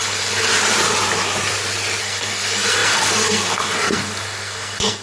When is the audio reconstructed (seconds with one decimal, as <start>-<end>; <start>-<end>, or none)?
0.0-0.5; 2.0-5.0